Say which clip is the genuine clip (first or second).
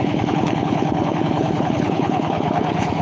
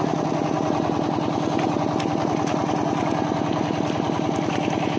second